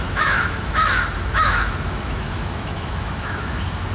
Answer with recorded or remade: remade